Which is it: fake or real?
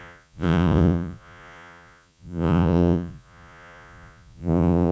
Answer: fake